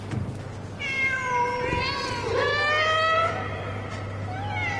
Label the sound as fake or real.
real